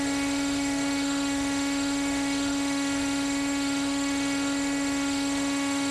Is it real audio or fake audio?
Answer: fake